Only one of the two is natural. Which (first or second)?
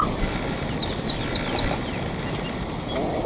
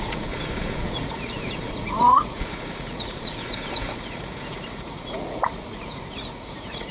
first